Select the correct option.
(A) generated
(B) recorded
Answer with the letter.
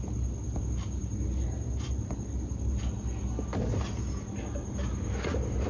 B